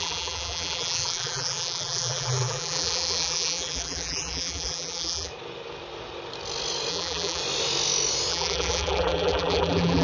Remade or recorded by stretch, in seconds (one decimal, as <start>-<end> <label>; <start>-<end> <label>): 0.0-5.3 remade; 5.3-6.9 recorded; 6.9-7.4 remade; 7.4-8.3 recorded; 8.3-10.0 remade